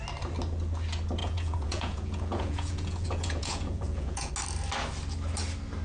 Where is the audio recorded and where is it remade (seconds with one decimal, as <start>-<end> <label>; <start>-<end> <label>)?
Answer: 0.0-1.2 recorded; 1.2-4.3 remade; 4.3-5.8 recorded